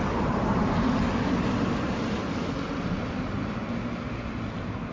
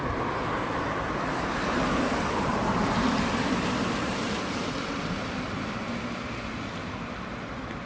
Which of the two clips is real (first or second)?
first